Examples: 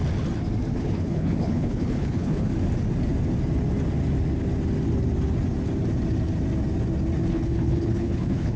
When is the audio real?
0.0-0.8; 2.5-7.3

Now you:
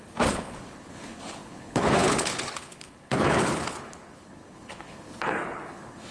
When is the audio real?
none

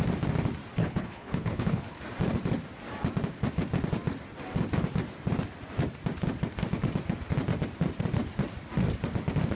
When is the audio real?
0.0-0.8; 2.0-9.6

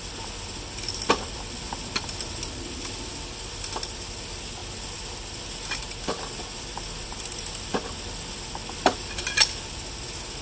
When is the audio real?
0.0-10.4

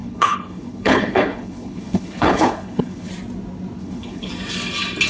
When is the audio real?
3.1-3.8; 4.3-5.1

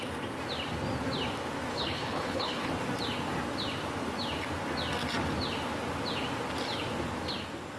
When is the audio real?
0.0-1.7; 2.7-7.8

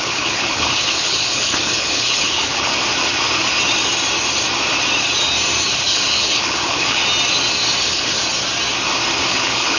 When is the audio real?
2.7-5.7; 7.0-7.8; 8.2-9.3